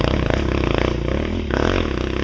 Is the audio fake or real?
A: real